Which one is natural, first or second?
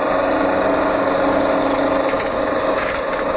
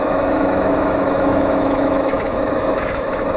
first